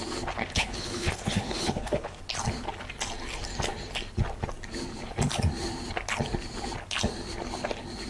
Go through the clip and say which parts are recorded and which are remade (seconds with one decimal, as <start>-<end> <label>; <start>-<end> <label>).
0.0-0.4 recorded; 0.4-2.2 remade; 2.2-8.1 recorded